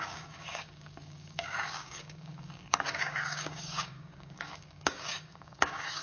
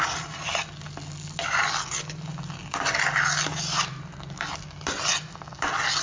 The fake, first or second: first